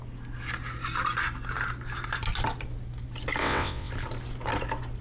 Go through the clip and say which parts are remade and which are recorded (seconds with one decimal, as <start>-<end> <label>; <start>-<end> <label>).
0.0-3.4 recorded; 3.4-3.9 remade; 3.9-5.0 recorded